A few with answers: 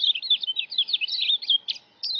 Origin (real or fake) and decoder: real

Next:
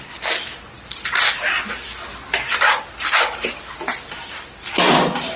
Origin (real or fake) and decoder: real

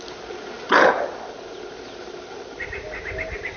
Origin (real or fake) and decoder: real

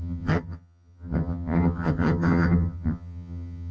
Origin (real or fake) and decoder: fake, vocoder, HiFi-GAN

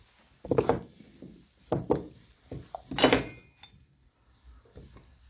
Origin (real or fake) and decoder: real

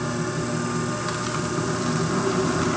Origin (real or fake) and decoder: real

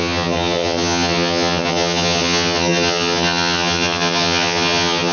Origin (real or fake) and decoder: fake, vocoder, HiFi-GAN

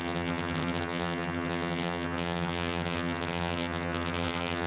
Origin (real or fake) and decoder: fake, vocoder, HiFi-GAN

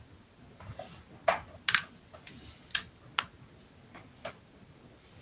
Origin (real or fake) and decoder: real